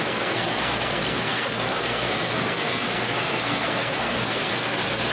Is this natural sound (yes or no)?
no